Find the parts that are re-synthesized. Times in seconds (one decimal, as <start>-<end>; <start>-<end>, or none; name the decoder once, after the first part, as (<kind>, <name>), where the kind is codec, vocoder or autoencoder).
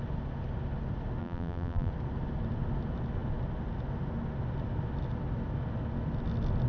1.2-1.9 (vocoder, BigVGAN v2)